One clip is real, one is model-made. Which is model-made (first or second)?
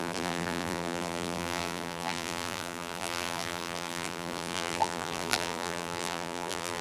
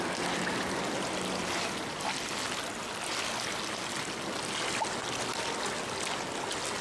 first